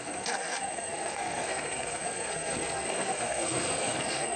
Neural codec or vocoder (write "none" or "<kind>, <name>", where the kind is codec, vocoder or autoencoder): codec, SNAC